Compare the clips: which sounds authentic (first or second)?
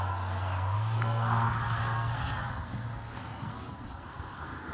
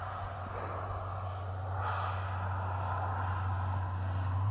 second